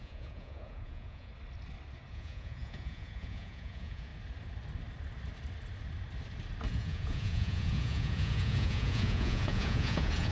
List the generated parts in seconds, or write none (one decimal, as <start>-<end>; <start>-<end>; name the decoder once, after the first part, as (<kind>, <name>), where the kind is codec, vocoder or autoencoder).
0.0-1.3 (vocoder, Vocos); 2.1-4.1; 6.7-10.3